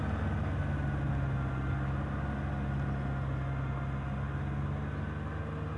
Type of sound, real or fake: real